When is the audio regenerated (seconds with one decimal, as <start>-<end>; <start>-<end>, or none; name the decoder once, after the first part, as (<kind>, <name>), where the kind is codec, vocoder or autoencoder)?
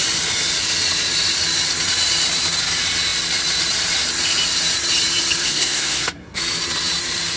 5.4-6.4 (codec, SNAC)